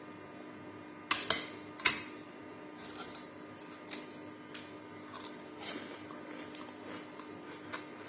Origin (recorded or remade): recorded